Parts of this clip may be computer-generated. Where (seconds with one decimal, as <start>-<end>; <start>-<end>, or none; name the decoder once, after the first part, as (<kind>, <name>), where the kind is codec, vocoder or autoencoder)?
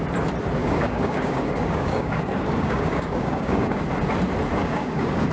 0.6-3.8 (codec, DAC); 4.6-5.3